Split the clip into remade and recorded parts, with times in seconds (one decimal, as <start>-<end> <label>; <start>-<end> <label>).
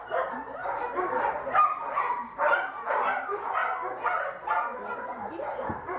0.0-3.6 remade; 3.6-4.8 recorded; 4.8-6.0 remade